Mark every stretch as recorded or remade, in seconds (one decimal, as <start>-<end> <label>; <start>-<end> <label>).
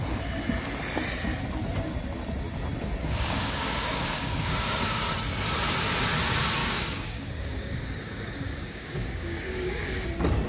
0.0-3.0 recorded; 3.0-5.0 remade; 5.0-6.6 recorded; 6.6-10.0 remade; 10.0-10.5 recorded